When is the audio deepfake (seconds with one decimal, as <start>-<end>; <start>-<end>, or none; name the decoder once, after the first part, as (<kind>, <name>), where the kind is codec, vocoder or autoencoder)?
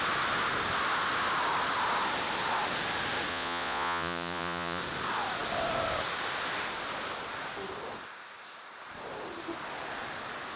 3.3-4.8 (vocoder, Vocos)